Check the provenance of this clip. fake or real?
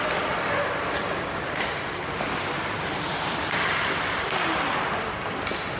real